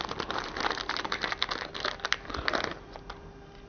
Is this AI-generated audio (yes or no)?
no